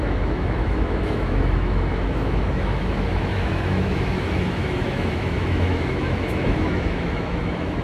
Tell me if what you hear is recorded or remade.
remade